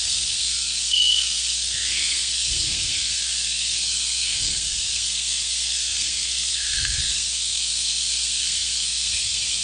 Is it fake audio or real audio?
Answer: fake